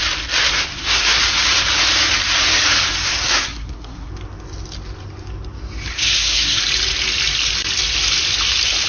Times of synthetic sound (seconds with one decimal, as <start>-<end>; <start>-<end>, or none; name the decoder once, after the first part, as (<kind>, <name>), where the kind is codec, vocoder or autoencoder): 0.5-1.2 (codec, SNAC); 3.1-4.1; 5.9-6.6

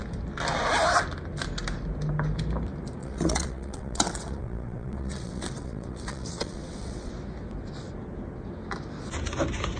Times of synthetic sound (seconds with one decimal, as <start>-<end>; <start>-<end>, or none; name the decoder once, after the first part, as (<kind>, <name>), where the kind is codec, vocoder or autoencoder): 3.0-7.1 (vocoder, WaveNeXt)

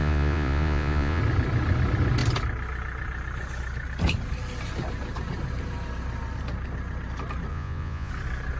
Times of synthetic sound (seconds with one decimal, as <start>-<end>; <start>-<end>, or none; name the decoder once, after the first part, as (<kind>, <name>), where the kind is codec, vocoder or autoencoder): 0.0-1.2 (vocoder, Vocos); 7.5-8.1

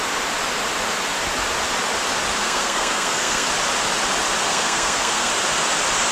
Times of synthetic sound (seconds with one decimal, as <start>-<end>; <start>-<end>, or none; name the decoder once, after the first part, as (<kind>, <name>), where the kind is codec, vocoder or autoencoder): 2.4-3.5 (codec, SNAC); 4.5-5.3

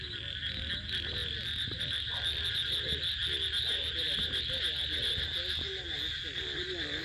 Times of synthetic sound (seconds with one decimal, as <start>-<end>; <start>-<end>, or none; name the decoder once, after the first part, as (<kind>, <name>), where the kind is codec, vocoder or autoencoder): none

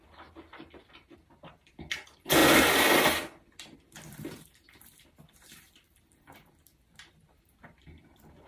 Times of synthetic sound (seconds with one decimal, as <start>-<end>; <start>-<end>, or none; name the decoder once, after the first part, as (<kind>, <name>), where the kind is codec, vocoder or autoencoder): 2.4-7.4 (vocoder, BigVGAN v2)

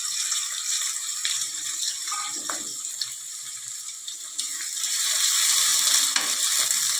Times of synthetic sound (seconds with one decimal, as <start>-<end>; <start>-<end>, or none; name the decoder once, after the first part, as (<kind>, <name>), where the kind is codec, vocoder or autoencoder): 0.0-5.7 (vocoder, BigVGAN v2)

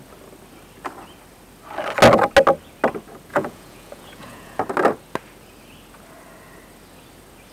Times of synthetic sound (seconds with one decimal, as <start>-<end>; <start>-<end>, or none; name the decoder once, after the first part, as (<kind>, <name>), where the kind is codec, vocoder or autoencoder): 3.3-4.6 (vocoder, Vocos)